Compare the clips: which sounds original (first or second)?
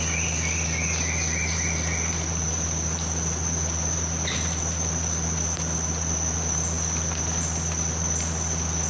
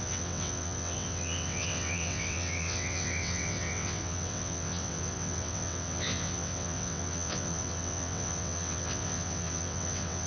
first